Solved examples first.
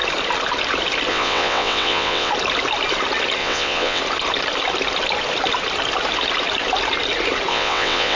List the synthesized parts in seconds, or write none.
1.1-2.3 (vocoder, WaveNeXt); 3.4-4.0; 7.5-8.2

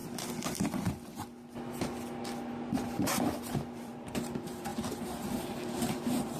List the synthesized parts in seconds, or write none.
3.8-4.7 (vocoder, BigVGAN v2); 5.7-6.4